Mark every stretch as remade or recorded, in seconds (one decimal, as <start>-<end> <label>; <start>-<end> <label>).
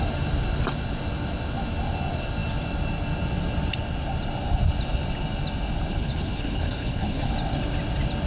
0.0-5.9 recorded; 5.9-7.3 remade; 7.3-8.3 recorded